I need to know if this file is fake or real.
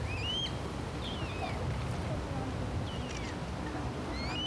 real